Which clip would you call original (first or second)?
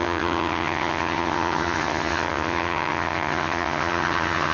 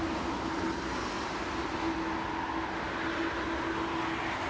second